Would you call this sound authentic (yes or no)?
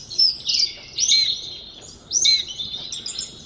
yes